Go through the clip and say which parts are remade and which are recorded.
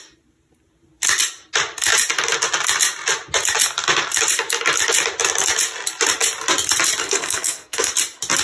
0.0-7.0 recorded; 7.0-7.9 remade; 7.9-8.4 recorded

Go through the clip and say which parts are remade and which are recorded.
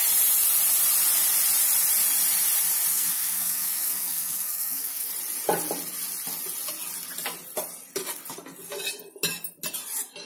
0.0-2.9 recorded; 2.9-5.1 remade; 5.1-10.3 recorded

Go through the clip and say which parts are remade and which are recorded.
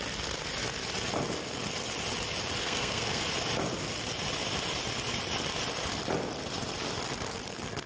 0.0-2.6 recorded; 2.6-3.2 remade; 3.2-7.9 recorded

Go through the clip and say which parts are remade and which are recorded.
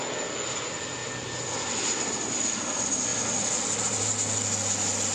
0.0-5.1 recorded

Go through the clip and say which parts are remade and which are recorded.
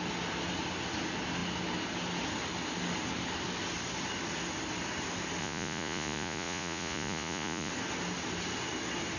0.0-5.4 recorded; 5.4-7.7 remade; 7.7-9.2 recorded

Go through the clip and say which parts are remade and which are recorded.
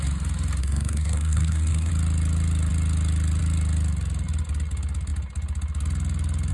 0.0-0.6 recorded; 0.6-1.9 remade; 1.9-6.5 recorded